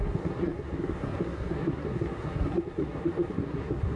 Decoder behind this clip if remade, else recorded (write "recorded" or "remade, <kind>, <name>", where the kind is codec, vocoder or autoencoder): remade, codec, SNAC